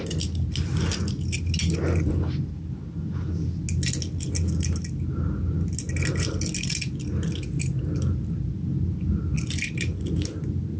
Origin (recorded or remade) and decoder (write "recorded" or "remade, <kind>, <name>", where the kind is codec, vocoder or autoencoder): recorded